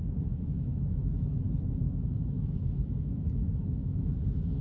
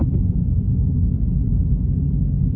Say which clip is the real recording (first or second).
second